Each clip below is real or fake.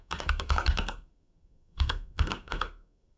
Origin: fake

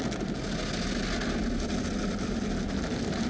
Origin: real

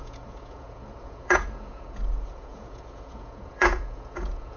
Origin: fake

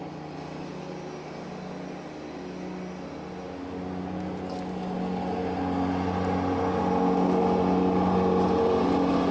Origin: real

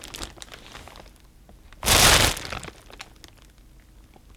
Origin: real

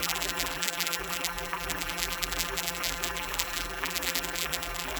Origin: fake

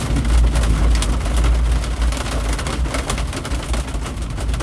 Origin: real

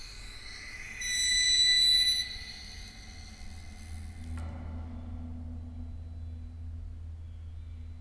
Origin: real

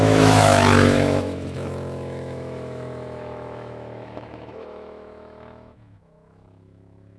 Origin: fake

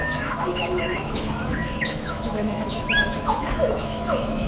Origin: fake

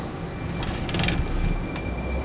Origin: real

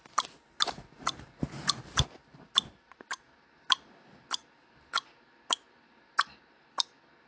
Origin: real